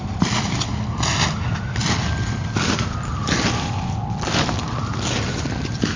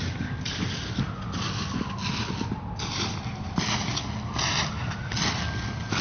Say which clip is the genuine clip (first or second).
second